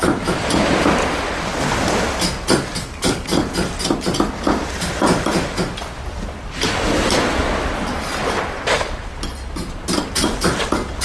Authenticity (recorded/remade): recorded